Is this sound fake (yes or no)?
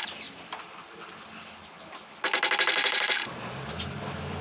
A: no